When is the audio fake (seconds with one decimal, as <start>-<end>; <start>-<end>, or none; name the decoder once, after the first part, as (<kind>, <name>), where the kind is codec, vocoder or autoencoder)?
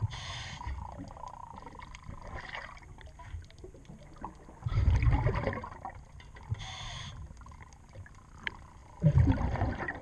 1.4-2.5 (vocoder, BigVGAN v2); 8.8-10.0